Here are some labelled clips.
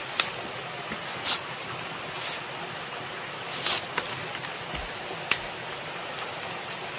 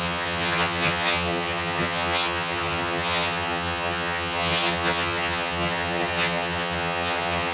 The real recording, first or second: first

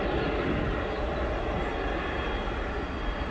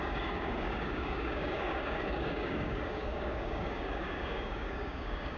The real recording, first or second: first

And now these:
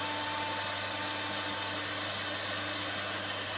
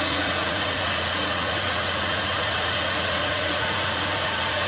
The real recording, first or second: first